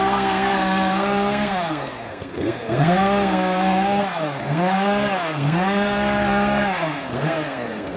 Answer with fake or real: fake